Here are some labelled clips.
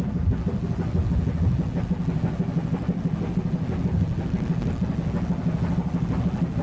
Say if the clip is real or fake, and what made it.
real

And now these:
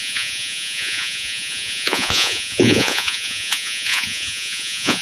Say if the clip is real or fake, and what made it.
fake, vocoder, Vocos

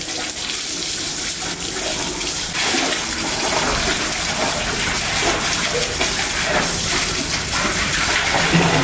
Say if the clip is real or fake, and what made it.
real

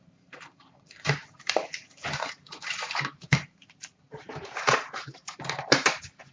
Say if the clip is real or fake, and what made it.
fake, vocoder, BigVGAN v2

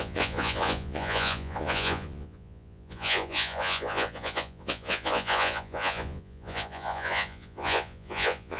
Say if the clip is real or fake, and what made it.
fake, vocoder, Vocos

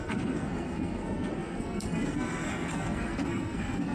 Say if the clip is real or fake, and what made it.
fake, codec, SNAC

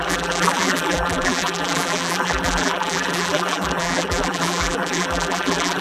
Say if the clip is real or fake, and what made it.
fake, vocoder, BigVGAN v2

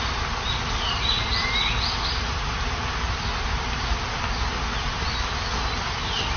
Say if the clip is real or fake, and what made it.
real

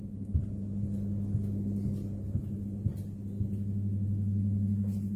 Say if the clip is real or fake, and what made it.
real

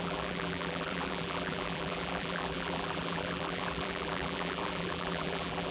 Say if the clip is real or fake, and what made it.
fake, vocoder, BigVGAN v2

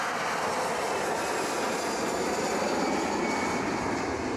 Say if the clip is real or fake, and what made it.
real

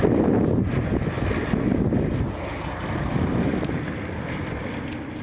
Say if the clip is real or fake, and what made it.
real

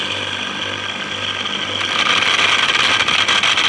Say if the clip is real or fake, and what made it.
real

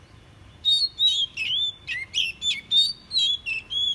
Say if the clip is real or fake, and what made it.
real